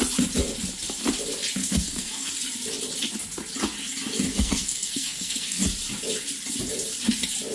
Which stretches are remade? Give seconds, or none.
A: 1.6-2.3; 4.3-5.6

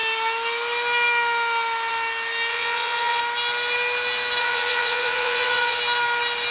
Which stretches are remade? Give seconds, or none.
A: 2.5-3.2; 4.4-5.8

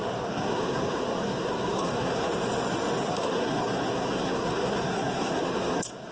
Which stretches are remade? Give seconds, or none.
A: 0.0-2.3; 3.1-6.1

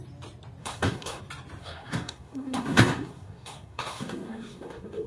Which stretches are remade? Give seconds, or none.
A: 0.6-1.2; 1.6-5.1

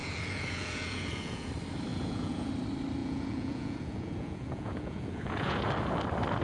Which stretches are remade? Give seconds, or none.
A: 0.0-1.5; 1.9-2.5; 3.0-5.7

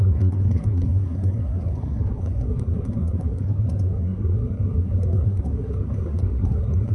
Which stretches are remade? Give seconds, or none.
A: 0.0-6.9